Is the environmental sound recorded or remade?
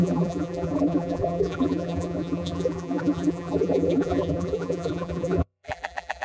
remade